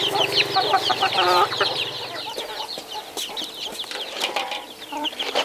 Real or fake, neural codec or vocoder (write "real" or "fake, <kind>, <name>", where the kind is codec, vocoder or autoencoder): fake, vocoder, BigVGAN v2